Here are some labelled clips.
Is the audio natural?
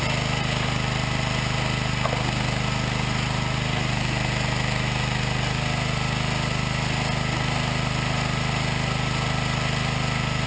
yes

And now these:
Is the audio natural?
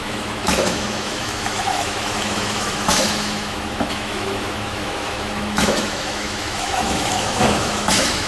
no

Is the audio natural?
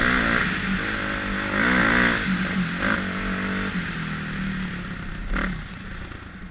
yes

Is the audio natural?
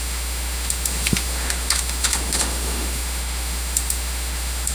no